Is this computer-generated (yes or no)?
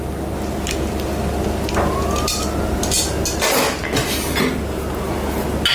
no